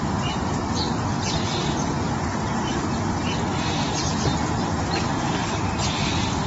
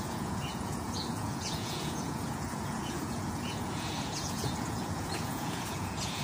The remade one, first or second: second